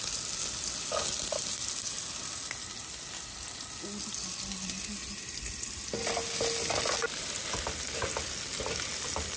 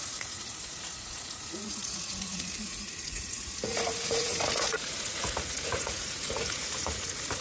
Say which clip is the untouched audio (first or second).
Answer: first